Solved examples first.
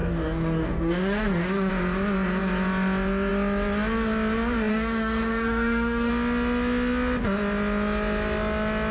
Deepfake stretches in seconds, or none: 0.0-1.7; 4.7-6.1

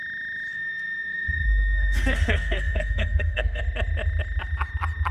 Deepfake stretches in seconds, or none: 0.5-3.6

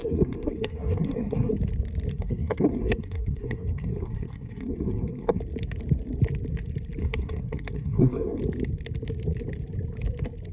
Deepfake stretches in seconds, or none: 0.0-1.5; 2.1-5.4; 7.0-8.4

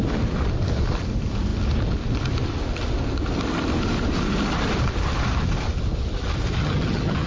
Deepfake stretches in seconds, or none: 6.6-7.3

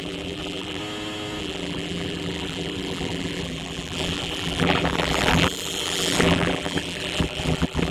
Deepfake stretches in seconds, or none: 0.0-0.8; 1.4-7.9